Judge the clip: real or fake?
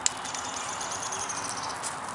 real